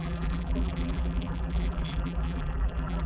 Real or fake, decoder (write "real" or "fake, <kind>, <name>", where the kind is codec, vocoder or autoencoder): fake, vocoder, BigVGAN v2